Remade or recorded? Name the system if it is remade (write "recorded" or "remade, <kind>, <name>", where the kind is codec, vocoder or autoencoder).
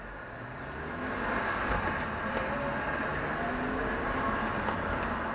recorded